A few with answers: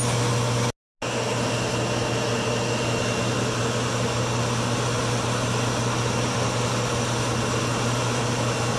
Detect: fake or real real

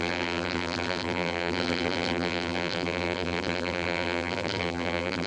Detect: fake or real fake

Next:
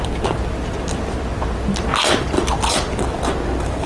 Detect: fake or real real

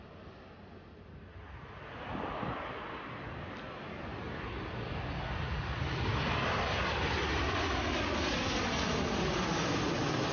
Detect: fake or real real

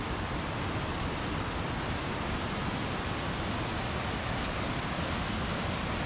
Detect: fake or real real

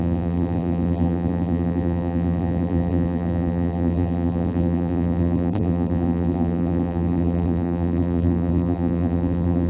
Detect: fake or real fake